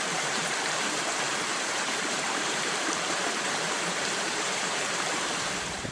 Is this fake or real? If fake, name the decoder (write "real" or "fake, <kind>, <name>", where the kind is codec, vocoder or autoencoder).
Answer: fake, vocoder, BigVGAN v2